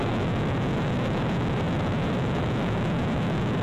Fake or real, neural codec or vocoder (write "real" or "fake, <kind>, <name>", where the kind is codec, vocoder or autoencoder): fake, autoencoder, DAC-VAE